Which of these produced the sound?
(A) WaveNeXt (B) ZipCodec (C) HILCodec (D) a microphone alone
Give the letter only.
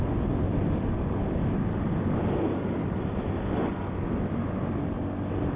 D